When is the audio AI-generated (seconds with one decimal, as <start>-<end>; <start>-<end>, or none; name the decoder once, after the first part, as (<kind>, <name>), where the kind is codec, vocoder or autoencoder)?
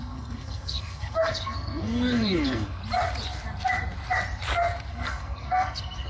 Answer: 0.0-2.8 (codec, SNAC); 4.9-6.1